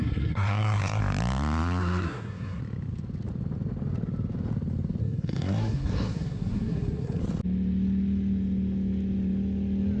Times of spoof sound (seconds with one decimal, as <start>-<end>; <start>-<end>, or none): 0.0-1.0; 1.8-2.6; 5.0-7.2